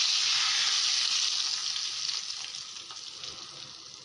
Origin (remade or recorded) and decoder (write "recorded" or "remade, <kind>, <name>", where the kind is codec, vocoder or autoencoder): recorded